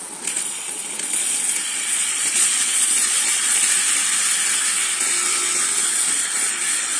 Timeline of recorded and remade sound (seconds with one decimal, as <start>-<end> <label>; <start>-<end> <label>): 0.0-3.6 remade; 3.6-5.8 recorded; 5.8-7.0 remade